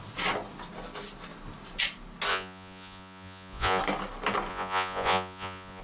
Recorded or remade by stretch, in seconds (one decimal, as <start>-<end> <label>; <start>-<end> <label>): 0.0-2.3 recorded; 2.3-3.8 remade; 3.8-4.5 recorded; 4.5-5.8 remade